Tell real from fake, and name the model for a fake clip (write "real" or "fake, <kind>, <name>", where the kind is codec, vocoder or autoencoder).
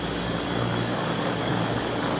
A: fake, codec, DAC